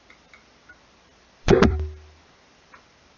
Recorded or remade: remade